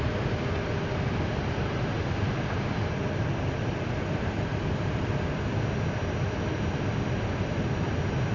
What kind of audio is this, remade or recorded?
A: recorded